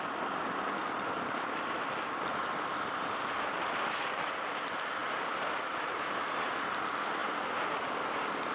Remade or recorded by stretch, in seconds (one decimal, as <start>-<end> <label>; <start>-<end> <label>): 0.0-8.5 recorded